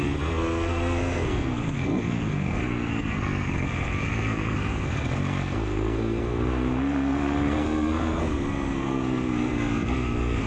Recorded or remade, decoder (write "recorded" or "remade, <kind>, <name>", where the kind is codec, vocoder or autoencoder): remade, codec, SNAC